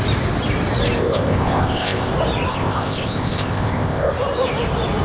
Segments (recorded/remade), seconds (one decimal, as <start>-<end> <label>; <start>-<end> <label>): 0.0-1.0 recorded; 1.0-2.1 remade; 2.1-2.5 recorded; 2.5-4.1 remade; 4.1-5.0 recorded